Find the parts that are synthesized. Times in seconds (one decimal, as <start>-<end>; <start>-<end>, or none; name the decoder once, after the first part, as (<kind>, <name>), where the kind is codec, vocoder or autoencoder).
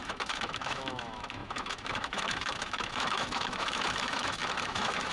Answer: 0.0-5.1 (autoencoder, DAC-VAE)